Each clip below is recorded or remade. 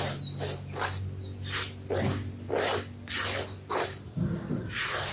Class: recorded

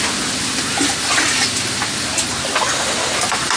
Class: recorded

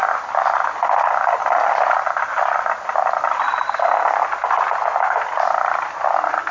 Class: recorded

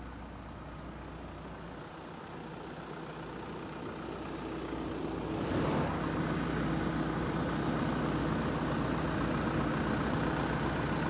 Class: recorded